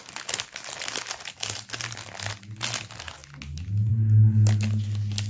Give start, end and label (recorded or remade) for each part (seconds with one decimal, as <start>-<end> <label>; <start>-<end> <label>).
0.0-5.3 recorded